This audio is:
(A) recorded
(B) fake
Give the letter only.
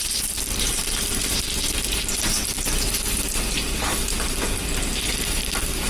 B